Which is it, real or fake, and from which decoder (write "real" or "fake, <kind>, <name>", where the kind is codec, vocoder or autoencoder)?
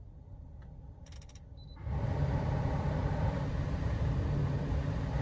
real